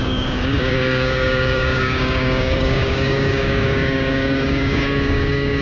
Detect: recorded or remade remade